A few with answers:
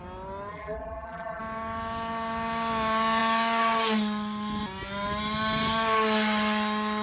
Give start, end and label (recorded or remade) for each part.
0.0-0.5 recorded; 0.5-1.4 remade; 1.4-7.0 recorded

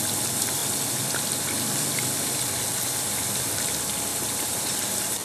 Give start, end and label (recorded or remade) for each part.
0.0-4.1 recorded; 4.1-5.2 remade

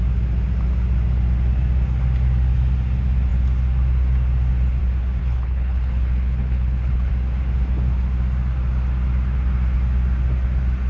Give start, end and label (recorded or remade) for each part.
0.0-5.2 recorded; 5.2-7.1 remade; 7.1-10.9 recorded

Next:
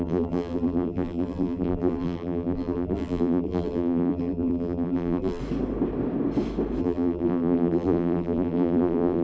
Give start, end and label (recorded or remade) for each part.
0.0-5.4 remade; 5.4-6.8 recorded; 6.8-9.2 remade